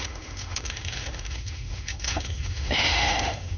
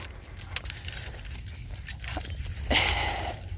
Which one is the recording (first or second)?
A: second